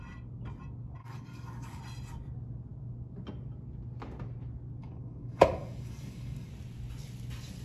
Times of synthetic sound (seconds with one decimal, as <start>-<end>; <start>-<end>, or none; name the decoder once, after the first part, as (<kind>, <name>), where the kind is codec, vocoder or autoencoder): 1.0-1.8 (codec, DAC); 4.8-6.5

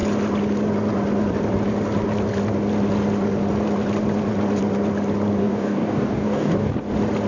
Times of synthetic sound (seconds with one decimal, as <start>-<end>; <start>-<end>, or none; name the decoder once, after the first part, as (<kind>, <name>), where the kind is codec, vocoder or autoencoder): 5.4-6.7 (codec, DAC)

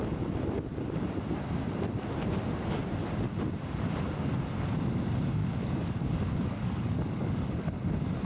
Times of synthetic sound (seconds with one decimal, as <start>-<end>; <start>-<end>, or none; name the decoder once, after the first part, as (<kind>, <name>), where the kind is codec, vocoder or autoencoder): 5.4-7.7 (codec, DAC)